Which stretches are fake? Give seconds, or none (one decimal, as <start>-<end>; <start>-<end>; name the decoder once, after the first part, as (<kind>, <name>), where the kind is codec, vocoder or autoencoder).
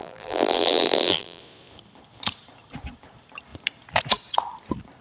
0.0-1.4 (vocoder, BigVGAN v2)